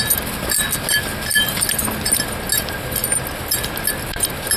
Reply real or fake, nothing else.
real